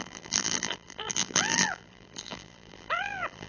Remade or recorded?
remade